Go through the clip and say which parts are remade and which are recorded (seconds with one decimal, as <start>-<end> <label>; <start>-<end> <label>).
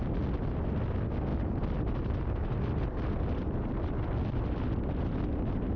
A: 0.0-5.8 recorded